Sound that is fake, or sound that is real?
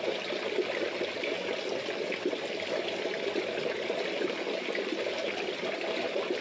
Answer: real